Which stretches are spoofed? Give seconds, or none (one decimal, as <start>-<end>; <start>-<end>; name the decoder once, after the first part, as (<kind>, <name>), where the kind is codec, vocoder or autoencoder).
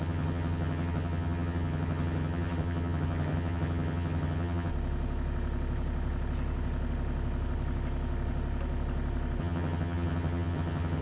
0.0-4.7 (vocoder, HiFi-GAN); 9.4-11.0